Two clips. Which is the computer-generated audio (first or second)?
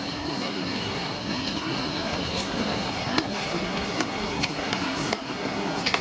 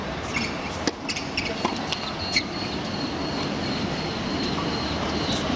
first